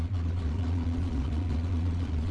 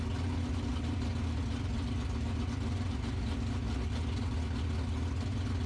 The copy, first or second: first